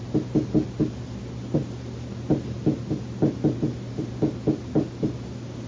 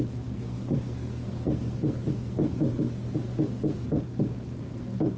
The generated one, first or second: second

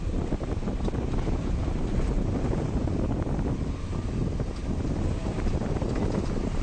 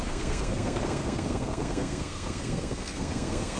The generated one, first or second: second